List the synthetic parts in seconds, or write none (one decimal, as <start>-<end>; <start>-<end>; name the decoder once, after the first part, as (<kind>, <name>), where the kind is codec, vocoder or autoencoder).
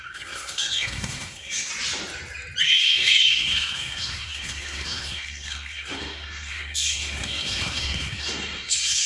0.0-1.7 (codec, SNAC); 2.6-9.1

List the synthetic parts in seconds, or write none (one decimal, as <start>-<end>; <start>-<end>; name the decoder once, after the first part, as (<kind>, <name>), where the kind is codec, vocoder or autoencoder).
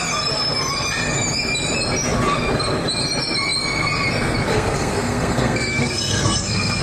4.5-6.8 (codec, SNAC)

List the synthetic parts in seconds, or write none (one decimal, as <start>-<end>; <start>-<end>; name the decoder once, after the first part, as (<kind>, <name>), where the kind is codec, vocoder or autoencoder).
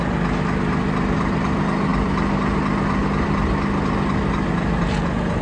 none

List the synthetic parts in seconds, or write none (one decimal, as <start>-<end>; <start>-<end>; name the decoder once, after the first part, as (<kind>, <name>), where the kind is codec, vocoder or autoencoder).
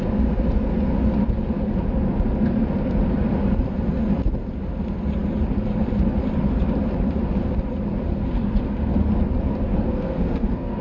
8.1-9.1 (codec, SNAC); 9.7-10.8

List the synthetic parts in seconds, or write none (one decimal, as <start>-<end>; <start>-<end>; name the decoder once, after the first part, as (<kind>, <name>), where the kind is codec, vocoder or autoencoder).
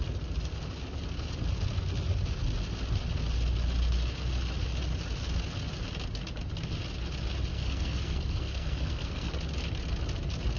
7.5-9.3 (codec, SNAC)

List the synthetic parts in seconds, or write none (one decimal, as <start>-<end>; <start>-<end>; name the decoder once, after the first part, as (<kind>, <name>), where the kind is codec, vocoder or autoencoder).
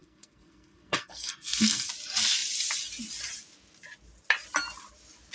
0.0-1.9 (codec, SNAC)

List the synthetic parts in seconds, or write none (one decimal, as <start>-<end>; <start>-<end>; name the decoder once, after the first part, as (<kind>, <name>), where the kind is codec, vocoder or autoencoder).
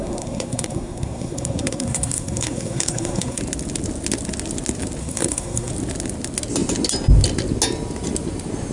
0.0-3.4 (codec, SNAC); 5.0-5.7